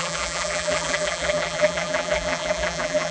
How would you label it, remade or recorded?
remade